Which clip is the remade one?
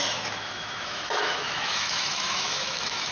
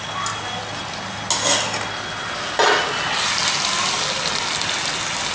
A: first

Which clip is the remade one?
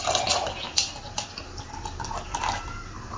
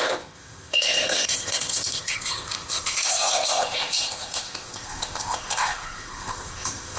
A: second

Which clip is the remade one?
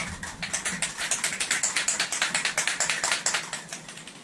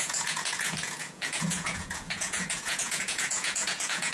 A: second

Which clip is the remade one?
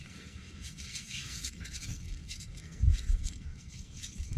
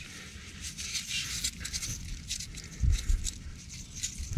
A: first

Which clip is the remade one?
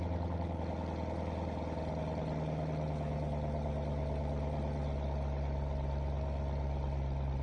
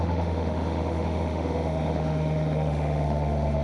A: second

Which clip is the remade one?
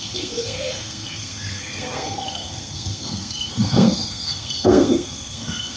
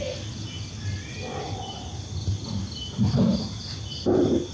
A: first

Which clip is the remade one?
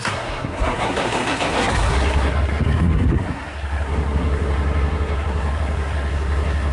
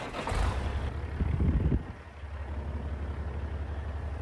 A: first